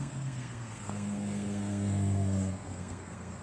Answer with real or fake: fake